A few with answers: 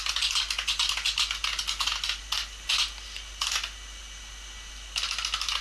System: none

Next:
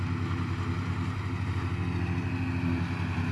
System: none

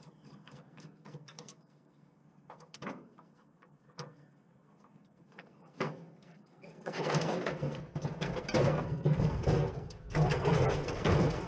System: codec, SNAC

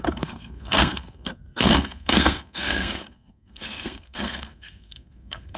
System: codec, SNAC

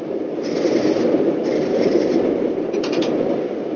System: none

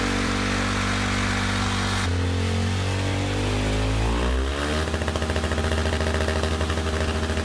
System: none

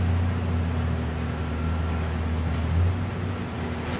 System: none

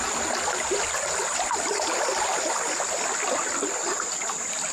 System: none